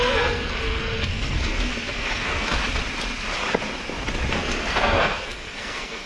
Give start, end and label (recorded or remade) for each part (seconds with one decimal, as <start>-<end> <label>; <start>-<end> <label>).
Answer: 0.0-2.6 remade; 2.6-4.3 recorded; 4.3-6.1 remade